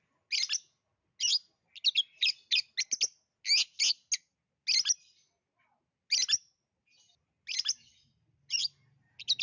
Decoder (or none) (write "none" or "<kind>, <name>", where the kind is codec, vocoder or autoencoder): none